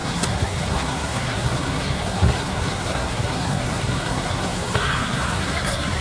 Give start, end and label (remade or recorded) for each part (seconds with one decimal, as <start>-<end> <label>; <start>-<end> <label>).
0.0-6.0 remade